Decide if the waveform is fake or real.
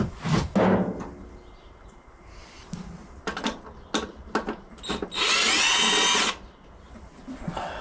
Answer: real